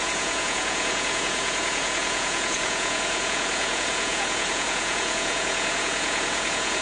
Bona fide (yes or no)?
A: no